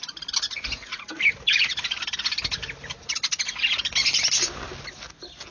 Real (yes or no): yes